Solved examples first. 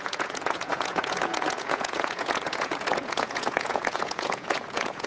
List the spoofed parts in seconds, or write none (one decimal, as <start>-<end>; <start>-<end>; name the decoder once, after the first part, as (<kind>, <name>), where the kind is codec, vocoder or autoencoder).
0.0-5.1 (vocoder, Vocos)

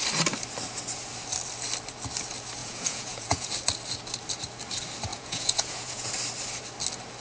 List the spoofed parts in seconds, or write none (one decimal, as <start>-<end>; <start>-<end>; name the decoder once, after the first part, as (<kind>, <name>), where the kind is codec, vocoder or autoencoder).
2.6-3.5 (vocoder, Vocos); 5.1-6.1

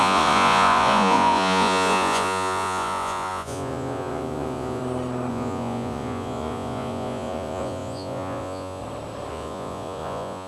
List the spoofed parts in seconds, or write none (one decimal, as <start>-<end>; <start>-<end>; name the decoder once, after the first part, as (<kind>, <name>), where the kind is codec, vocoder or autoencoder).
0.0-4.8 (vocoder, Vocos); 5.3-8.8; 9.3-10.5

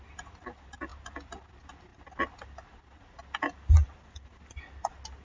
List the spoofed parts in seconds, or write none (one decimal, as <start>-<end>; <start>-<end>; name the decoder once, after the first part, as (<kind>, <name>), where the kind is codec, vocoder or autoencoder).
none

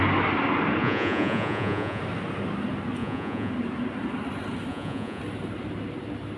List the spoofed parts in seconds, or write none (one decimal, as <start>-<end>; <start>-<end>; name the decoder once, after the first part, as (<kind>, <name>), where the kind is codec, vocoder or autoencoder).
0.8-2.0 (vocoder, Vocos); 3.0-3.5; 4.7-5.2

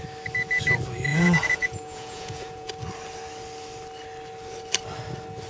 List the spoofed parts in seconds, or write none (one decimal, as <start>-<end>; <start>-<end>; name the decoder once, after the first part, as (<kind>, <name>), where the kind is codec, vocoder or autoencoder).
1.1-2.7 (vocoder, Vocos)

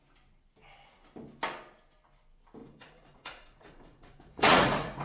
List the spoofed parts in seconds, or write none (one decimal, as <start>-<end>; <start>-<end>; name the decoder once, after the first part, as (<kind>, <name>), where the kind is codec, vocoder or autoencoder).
2.6-5.0 (vocoder, Vocos)

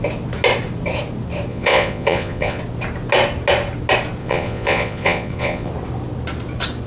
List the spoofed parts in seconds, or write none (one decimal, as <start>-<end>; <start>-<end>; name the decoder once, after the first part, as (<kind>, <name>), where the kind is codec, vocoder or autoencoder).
1.5-2.6 (vocoder, Vocos); 4.2-5.7